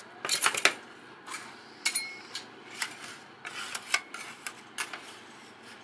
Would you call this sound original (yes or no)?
yes